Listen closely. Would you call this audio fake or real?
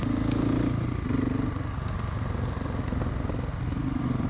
real